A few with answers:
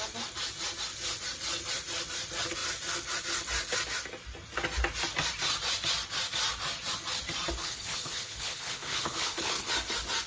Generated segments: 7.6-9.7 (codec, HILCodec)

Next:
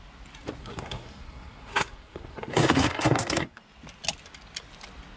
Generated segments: 0.6-3.6 (codec, SNAC)

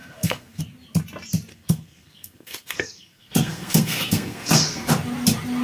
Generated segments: 0.0-0.6 (codec, SNAC); 1.5-4.9

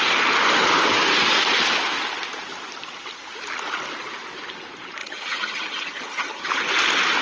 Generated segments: 5.0-6.5 (vocoder, HiFi-GAN)